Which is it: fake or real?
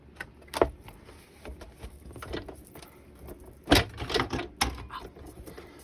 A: real